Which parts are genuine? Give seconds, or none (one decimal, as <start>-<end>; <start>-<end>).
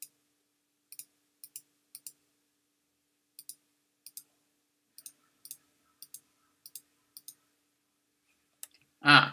0.0-9.3